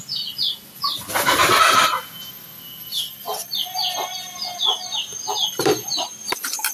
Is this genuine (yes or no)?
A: yes